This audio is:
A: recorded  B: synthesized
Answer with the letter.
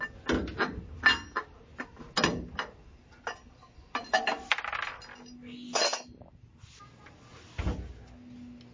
A